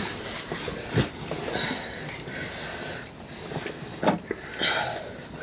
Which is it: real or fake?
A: real